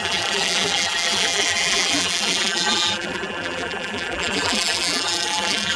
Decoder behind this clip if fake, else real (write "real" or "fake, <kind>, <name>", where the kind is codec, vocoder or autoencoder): fake, vocoder, BigVGAN v2